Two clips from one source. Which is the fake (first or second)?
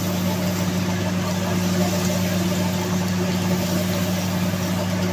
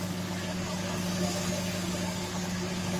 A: second